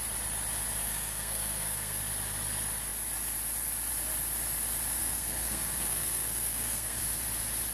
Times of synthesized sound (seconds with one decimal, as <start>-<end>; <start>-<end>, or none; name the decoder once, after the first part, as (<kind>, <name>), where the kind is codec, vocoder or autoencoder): 0.8-2.0 (codec, SNAC); 5.0-7.0